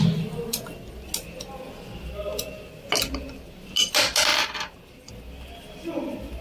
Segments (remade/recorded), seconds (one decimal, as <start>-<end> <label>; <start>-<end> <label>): 0.0-4.3 recorded; 4.3-5.1 remade; 5.1-6.4 recorded